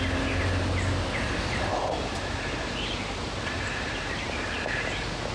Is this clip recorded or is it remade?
recorded